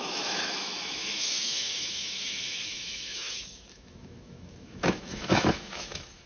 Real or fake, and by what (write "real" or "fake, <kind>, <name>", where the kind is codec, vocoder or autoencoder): fake, autoencoder, DAC-VAE